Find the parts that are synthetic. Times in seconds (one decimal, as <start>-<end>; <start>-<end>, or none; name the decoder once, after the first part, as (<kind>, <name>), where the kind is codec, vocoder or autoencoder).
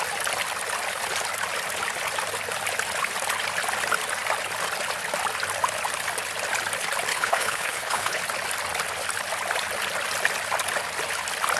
7.1-8.2 (codec, HILCodec)